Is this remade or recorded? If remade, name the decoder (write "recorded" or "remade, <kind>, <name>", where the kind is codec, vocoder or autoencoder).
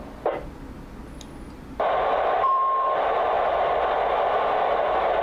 remade, vocoder, BigVGAN v2